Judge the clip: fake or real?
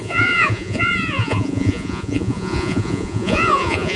fake